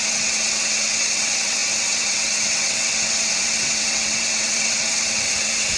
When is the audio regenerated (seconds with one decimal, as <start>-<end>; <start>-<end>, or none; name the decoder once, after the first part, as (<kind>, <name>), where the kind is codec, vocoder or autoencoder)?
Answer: 0.0-5.8 (vocoder, WaveNeXt)